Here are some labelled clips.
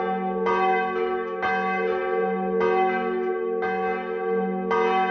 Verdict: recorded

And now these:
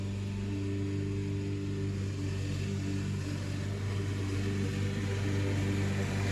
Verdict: recorded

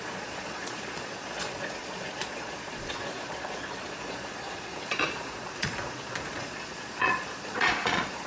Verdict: remade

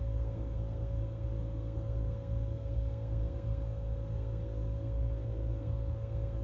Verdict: remade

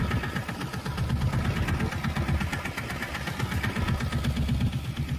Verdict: recorded